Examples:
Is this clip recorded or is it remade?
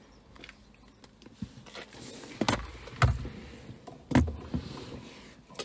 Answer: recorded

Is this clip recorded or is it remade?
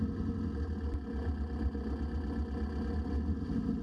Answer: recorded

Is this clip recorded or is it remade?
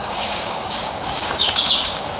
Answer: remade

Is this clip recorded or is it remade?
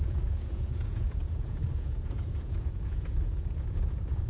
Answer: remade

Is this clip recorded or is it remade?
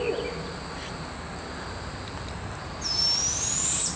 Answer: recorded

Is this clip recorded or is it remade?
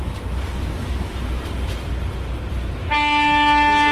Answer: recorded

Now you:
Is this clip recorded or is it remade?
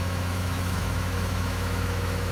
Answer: remade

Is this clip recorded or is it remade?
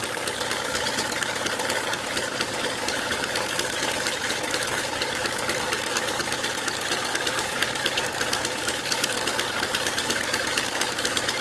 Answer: remade